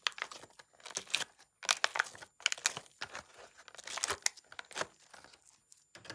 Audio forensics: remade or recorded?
recorded